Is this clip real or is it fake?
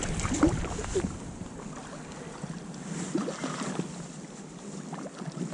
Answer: real